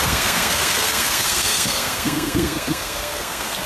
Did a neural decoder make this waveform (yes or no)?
yes